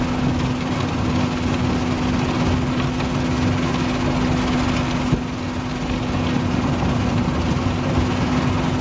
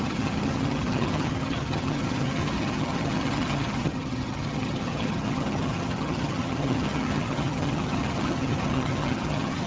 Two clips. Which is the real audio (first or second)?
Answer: first